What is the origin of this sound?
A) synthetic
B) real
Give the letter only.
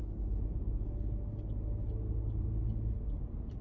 B